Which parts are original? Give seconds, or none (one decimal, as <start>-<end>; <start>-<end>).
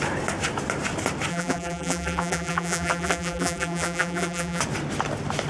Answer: 0.0-1.3; 4.6-5.5